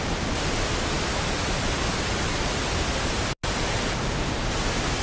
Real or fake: real